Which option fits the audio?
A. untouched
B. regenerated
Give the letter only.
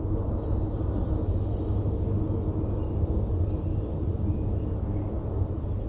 A